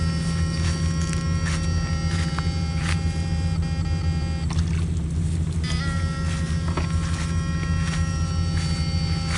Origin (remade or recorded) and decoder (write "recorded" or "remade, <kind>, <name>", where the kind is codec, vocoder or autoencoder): recorded